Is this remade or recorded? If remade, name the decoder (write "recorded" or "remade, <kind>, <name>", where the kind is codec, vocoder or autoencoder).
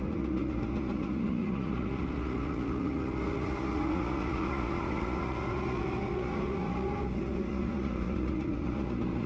remade, vocoder, Vocos